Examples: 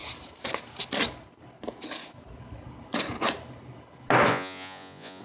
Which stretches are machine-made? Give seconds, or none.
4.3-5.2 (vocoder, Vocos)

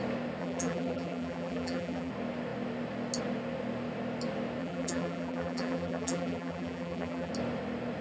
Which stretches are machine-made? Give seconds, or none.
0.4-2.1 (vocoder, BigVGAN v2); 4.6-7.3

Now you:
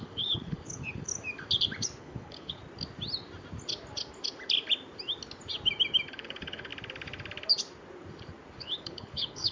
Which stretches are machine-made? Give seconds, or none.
0.0-1.1 (codec, HILCodec); 2.0-2.6; 6.1-6.7; 8.6-9.5

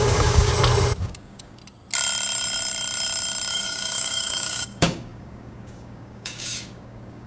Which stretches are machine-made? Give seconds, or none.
0.0-0.5 (codec, DAC); 1.0-1.6; 3.5-7.3

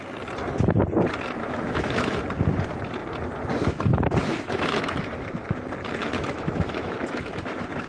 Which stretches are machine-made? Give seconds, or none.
1.4-2.2 (autoencoder, DAC-VAE); 4.2-5.1; 6.0-7.9

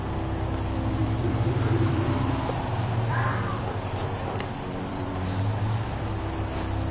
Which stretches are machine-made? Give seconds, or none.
1.0-5.1 (vocoder, BigVGAN v2)